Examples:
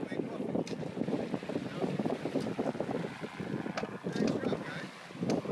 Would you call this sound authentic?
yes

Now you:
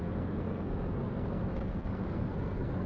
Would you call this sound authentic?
no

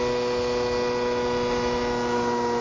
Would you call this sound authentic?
yes